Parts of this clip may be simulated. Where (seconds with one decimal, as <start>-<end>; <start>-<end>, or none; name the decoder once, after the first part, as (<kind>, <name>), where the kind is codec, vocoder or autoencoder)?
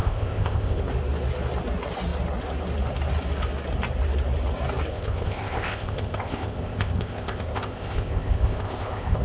0.0-0.8 (codec, ZipCodec); 4.9-9.2